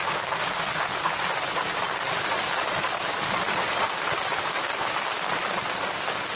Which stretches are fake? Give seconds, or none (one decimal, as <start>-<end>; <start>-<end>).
none